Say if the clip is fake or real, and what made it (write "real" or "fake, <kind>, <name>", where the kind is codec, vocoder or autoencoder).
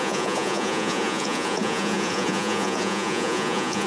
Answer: fake, vocoder, Vocos